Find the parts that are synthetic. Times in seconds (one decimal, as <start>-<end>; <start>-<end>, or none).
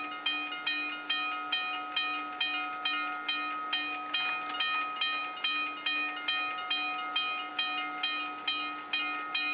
none